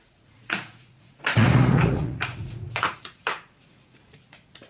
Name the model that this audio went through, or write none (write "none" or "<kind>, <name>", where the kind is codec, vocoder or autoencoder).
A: vocoder, Vocos